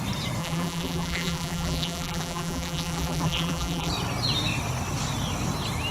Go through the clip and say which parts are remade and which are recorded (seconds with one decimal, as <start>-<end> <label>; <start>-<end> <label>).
0.0-0.4 recorded; 0.4-3.9 remade; 3.9-5.9 recorded